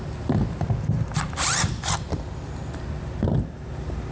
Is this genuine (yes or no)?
yes